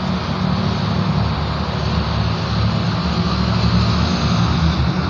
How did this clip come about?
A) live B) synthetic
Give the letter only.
A